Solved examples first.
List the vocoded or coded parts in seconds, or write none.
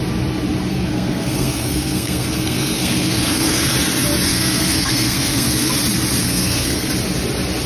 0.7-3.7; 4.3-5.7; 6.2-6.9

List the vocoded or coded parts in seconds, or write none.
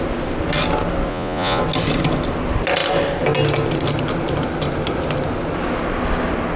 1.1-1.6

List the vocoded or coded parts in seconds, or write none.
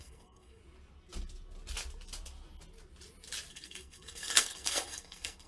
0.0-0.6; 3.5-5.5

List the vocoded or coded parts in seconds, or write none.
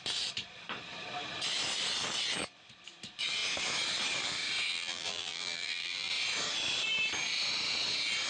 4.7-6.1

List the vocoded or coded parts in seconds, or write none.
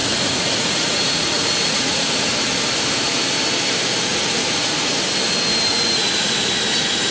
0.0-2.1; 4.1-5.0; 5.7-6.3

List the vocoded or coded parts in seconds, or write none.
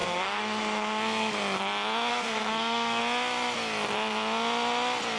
0.0-1.3; 2.1-3.0